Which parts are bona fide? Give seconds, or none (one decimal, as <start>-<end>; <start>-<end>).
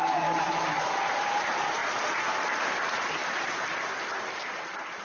1.8-2.7; 3.2-4.3